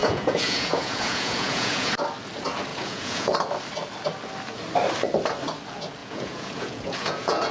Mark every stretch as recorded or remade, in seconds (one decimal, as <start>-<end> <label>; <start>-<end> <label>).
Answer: 0.0-1.9 remade; 1.9-2.7 recorded; 2.7-3.3 remade; 3.3-6.0 recorded; 6.0-7.5 remade